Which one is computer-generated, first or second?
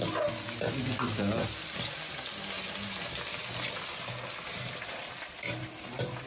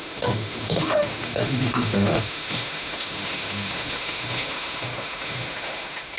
second